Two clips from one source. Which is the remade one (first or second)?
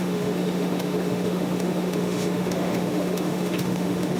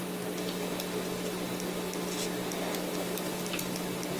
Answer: first